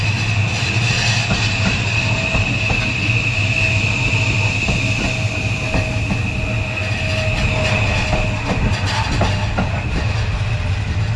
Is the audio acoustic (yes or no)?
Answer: yes